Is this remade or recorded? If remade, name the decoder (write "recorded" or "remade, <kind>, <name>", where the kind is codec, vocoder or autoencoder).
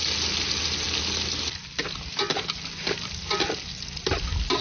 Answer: recorded